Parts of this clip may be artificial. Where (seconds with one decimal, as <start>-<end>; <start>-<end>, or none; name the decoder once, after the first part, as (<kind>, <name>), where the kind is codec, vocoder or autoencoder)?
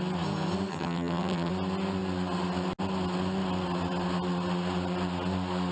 0.7-1.5 (vocoder, HiFi-GAN)